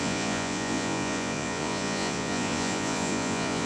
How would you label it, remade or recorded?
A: remade